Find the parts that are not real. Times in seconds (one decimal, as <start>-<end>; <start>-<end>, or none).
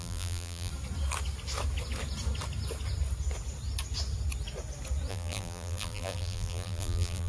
0.0-0.7; 5.1-7.3